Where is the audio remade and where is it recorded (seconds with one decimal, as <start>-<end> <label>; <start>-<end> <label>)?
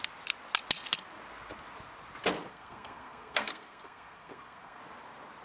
0.0-2.5 recorded; 2.5-4.8 remade; 4.8-5.4 recorded